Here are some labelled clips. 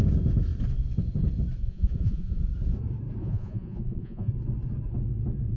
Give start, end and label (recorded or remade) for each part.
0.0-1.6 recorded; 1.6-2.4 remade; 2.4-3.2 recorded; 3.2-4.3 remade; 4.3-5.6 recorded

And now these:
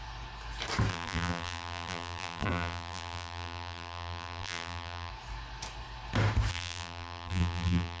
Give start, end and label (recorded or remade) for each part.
0.0-0.9 recorded; 0.9-5.1 remade; 5.1-6.5 recorded; 6.5-8.0 remade